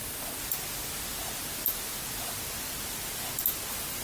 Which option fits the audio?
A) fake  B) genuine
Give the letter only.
B